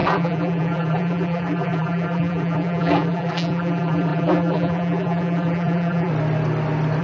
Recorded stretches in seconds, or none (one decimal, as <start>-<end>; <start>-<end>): 6.1-7.0